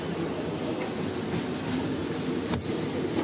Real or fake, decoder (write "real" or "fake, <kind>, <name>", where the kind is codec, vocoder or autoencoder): real